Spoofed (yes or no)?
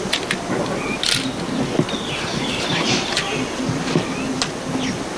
no